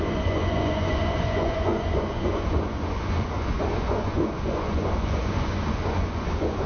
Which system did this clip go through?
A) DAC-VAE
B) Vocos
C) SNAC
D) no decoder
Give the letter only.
B